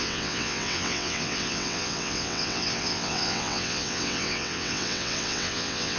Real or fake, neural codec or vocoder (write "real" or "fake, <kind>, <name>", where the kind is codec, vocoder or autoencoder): fake, vocoder, WaveNeXt